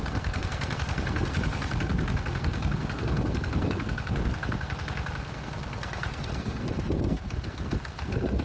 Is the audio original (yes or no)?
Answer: no